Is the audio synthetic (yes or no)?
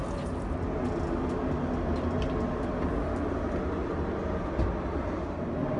no